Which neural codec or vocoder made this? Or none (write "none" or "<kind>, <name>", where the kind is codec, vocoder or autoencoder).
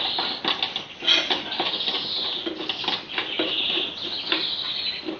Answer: none